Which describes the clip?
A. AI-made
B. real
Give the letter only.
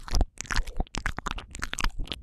B